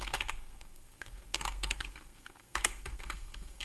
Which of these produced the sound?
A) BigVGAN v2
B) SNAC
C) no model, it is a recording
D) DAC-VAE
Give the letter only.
B